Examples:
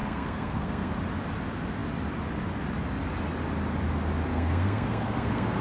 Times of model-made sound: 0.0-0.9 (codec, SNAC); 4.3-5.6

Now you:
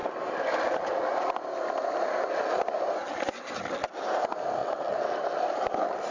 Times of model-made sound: 4.6-5.2 (vocoder, WaveNeXt)